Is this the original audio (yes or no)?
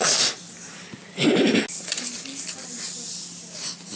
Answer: yes